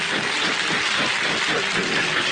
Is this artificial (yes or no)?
no